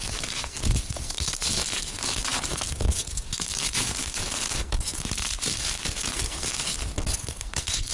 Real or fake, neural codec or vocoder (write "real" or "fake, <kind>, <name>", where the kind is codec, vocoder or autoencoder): fake, codec, SNAC